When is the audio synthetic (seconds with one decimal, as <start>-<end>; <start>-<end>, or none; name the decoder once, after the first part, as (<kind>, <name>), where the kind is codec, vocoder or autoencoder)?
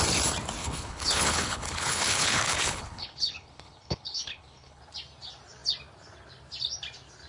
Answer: 0.6-4.8 (codec, HILCodec)